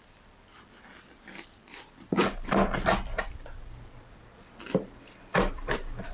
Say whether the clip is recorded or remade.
recorded